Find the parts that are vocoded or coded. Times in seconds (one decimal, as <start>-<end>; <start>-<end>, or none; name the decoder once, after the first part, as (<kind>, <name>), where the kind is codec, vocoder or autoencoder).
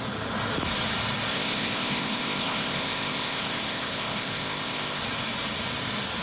1.3-5.0 (codec, ZipCodec)